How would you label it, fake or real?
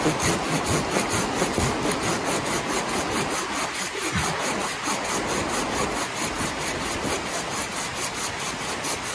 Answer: real